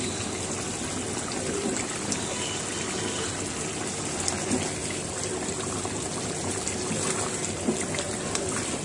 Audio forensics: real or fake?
real